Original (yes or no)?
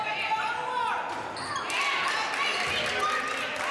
yes